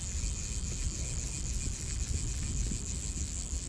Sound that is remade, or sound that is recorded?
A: recorded